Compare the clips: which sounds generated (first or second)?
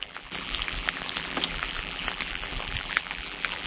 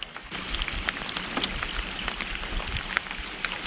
first